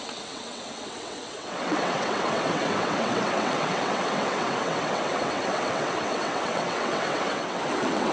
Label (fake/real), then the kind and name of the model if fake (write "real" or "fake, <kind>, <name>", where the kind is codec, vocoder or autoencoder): fake, vocoder, WaveNeXt